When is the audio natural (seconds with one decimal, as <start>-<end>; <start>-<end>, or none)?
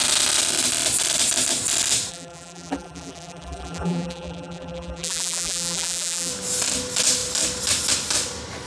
0.0-2.1; 6.3-8.7